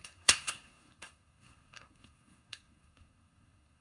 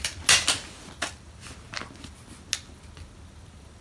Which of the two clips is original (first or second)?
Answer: second